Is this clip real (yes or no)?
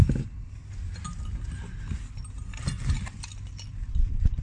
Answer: yes